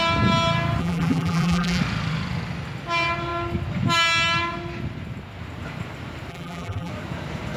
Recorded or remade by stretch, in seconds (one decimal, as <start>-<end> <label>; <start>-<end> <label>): 0.0-0.8 recorded; 0.8-1.8 remade; 1.8-6.3 recorded; 6.3-6.9 remade; 6.9-7.6 recorded